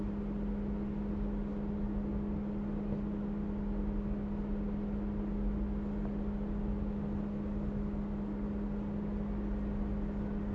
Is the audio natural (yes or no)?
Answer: yes